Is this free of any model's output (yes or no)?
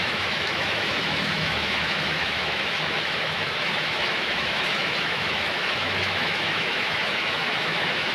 no